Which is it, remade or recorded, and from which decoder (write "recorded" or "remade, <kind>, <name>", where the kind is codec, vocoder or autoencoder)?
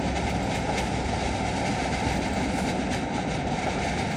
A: recorded